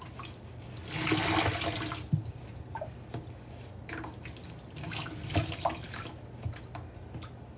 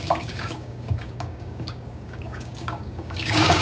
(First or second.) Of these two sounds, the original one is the first